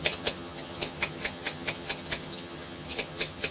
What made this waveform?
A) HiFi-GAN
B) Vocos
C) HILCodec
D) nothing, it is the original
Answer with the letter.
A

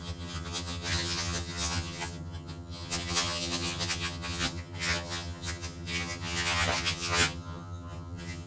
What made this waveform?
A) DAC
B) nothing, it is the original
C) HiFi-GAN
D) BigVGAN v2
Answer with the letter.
C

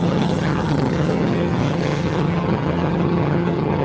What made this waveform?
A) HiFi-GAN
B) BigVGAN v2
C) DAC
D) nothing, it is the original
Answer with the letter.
A